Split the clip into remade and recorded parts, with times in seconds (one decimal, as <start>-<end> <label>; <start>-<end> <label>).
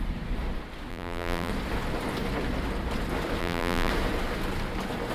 0.0-0.9 recorded; 0.9-1.5 remade; 1.5-3.4 recorded; 3.4-3.9 remade; 3.9-5.1 recorded